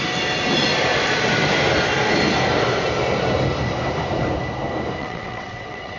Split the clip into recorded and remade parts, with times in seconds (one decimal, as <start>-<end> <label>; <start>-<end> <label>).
0.0-5.0 recorded; 5.0-6.0 remade